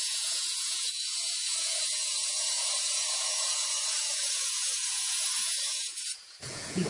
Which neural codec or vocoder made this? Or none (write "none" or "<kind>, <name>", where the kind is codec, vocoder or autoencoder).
vocoder, Vocos